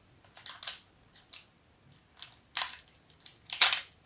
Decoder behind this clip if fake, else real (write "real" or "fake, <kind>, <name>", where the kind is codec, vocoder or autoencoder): real